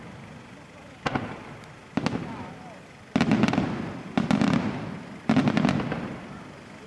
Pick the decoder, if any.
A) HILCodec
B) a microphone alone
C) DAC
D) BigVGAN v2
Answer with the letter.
B